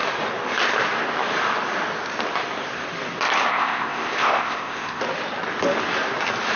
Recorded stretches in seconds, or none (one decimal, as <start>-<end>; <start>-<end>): 0.0-3.5; 5.0-6.6